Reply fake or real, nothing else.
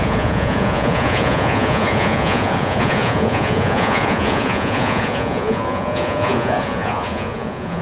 fake